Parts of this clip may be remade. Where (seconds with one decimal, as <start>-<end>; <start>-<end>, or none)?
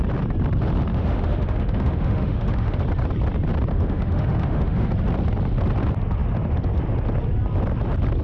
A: 0.9-2.8; 3.7-4.9